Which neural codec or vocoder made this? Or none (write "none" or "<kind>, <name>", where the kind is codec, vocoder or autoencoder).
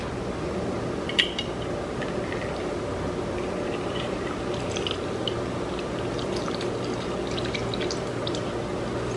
none